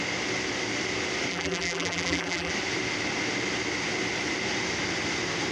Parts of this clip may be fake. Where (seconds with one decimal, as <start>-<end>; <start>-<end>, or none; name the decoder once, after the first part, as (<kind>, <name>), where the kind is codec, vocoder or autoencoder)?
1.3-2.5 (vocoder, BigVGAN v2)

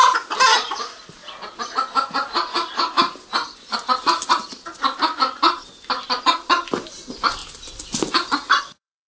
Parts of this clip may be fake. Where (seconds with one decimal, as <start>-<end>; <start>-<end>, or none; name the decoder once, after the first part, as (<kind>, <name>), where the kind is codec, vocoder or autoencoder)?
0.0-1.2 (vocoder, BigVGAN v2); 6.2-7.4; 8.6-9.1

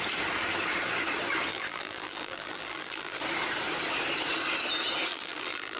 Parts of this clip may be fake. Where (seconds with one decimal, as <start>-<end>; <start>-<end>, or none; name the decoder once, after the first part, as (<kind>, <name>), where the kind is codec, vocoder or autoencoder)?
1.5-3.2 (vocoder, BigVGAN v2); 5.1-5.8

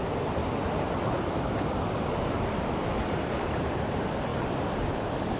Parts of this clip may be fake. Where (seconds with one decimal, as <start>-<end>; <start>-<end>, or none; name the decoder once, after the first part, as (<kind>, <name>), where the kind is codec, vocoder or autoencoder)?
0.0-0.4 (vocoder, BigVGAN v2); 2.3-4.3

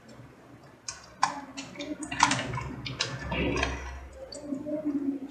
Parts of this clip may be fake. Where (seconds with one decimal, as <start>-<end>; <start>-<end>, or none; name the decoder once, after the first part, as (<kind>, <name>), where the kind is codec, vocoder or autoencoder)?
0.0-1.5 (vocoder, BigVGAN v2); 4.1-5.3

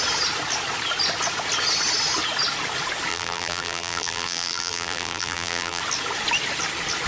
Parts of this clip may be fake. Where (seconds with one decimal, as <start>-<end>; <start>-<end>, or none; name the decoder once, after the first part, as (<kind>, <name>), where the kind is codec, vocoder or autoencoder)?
3.1-5.8 (vocoder, BigVGAN v2)

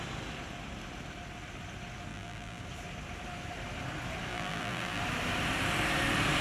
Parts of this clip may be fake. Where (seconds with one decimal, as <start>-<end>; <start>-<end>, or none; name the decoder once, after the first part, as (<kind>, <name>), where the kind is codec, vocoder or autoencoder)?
2.1-2.6 (vocoder, BigVGAN v2); 4.3-5.0

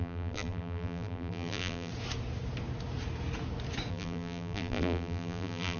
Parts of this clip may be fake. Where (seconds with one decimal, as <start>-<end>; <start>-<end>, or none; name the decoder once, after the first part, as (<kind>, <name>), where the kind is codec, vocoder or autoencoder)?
0.0-1.9 (vocoder, BigVGAN v2); 3.9-5.8